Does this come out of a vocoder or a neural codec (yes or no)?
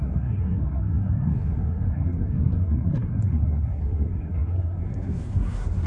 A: yes